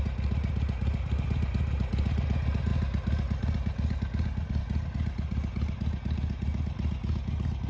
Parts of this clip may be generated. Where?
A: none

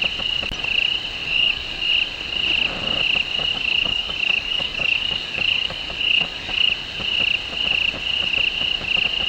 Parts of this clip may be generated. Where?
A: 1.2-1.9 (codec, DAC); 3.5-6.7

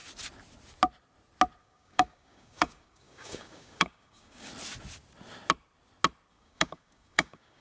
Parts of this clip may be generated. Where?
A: 1.6-4.5 (codec, DAC); 6.3-7.6

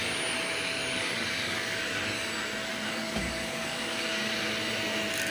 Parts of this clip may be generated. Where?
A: 0.8-2.0 (codec, DAC); 2.7-4.3

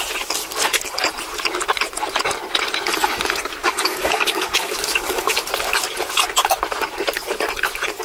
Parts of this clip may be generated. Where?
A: 3.6-5.3 (codec, DAC)

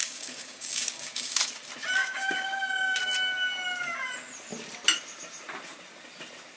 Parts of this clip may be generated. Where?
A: 0.0-1.4 (codec, DAC); 2.0-3.0

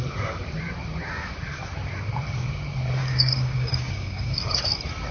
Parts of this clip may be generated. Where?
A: 3.0-4.6 (codec, DAC)

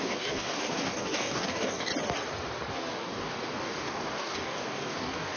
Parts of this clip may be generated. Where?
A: 0.0-1.9 (codec, DAC); 2.7-5.4